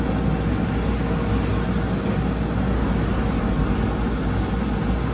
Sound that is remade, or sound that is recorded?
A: recorded